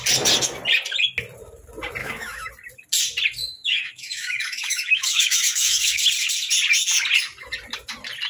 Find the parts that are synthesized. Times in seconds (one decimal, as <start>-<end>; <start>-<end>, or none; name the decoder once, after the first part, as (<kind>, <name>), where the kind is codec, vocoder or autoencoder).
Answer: 2.0-2.5 (autoencoder, DAC-VAE); 3.4-6.0